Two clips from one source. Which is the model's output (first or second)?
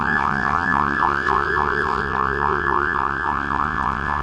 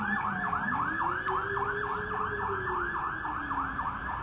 first